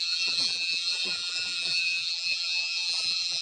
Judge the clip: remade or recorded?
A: remade